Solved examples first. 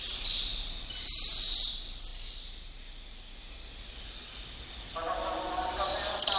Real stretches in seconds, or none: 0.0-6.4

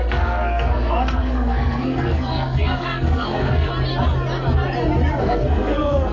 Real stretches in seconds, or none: 3.7-5.2

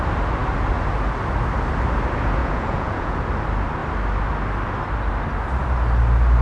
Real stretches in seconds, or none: 0.0-2.4; 3.3-6.4

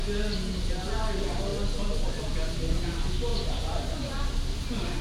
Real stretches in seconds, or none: 0.0-5.0

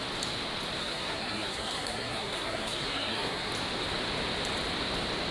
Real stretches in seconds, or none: 0.0-0.8; 3.5-5.3

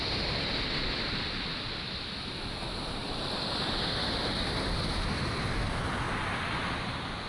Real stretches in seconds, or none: 0.0-7.3